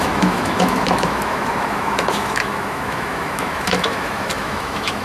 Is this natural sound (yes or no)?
no